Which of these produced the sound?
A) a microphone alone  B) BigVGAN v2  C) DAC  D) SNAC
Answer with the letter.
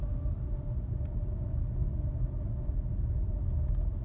A